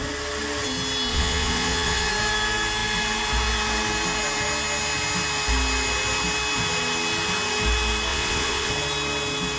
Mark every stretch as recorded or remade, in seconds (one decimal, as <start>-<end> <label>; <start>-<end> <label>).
0.0-1.1 recorded; 1.1-2.1 remade; 2.1-8.1 recorded; 8.1-8.7 remade; 8.7-9.6 recorded

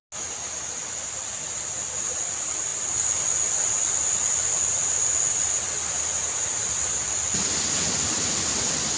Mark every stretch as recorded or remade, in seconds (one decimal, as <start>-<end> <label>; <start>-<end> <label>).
0.0-9.0 recorded

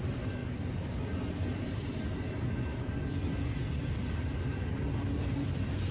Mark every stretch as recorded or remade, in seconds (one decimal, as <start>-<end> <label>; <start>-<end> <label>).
0.0-5.9 recorded

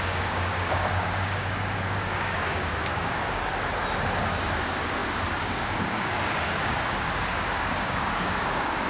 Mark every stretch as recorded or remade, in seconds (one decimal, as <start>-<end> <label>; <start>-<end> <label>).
0.0-3.5 remade; 3.5-4.3 recorded; 4.3-8.9 remade

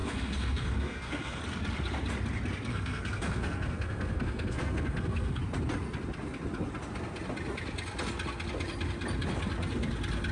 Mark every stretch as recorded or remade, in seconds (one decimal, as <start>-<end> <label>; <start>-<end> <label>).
0.0-1.4 remade; 1.4-2.7 recorded; 2.7-5.4 remade; 5.4-10.3 recorded